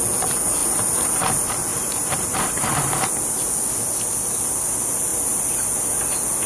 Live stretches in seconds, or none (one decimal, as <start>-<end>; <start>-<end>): 0.0-0.6; 1.1-1.7; 2.9-6.5